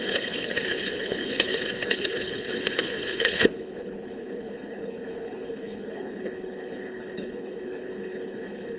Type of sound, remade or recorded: remade